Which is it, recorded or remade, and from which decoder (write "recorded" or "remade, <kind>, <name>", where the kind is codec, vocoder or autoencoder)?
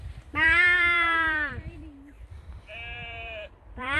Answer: remade, vocoder, BigVGAN v2